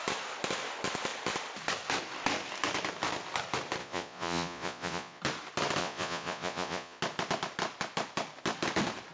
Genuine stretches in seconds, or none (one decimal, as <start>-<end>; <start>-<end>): 0.0-3.8; 5.2-5.8; 7.0-9.1